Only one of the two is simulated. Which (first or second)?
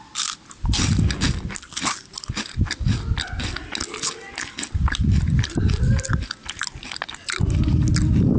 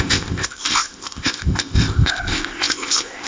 second